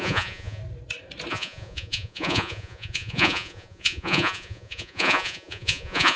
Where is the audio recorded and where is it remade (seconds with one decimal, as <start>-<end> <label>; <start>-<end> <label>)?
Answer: 0.0-0.6 remade; 0.6-1.3 recorded; 1.3-6.2 remade